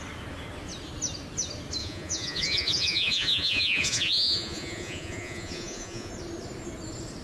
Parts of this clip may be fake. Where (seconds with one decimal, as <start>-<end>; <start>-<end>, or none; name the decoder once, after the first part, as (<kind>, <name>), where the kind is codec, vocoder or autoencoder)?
1.8-6.1 (vocoder, Vocos)